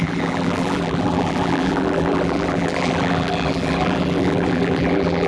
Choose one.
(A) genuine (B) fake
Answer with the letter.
B